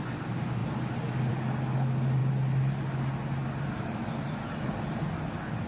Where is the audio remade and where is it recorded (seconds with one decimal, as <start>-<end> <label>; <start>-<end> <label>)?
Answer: 0.0-5.7 recorded